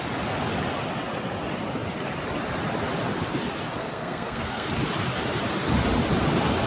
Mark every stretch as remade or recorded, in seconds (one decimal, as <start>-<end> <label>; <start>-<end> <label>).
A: 0.0-3.8 recorded; 3.8-4.7 remade; 4.7-6.7 recorded